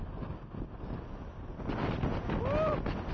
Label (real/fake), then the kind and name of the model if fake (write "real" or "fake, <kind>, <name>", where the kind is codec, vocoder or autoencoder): real